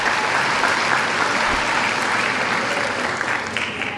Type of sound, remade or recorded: recorded